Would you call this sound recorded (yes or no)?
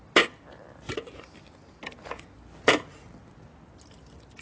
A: yes